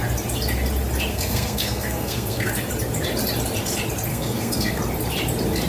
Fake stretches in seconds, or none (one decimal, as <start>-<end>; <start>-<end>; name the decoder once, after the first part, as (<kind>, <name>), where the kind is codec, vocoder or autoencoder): 1.1-2.5 (codec, SNAC); 4.1-4.8